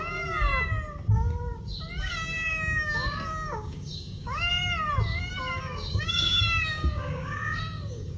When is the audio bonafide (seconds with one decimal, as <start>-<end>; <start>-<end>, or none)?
0.5-2.0; 4.5-5.2